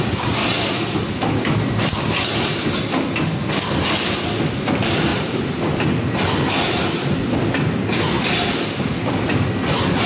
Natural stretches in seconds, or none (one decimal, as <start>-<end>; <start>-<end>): 0.0-5.1; 5.7-10.1